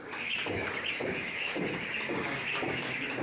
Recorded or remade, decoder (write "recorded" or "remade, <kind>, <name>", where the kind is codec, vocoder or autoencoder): remade, codec, DAC